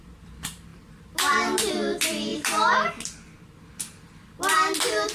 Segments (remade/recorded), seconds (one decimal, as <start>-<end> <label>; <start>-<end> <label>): 0.0-0.7 recorded; 0.7-1.7 remade; 1.7-2.3 recorded; 2.3-2.9 remade; 2.9-5.1 recorded